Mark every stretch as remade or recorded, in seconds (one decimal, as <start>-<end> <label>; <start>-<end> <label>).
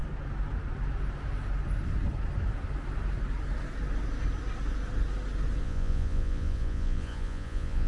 0.0-5.6 recorded; 5.6-7.9 remade